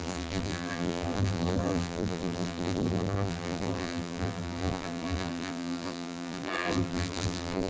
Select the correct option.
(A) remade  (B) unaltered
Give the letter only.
A